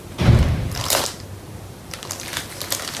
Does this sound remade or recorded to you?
remade